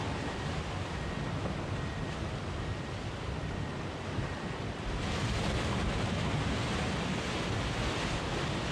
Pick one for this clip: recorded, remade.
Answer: recorded